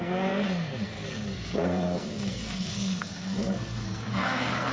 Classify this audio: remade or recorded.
remade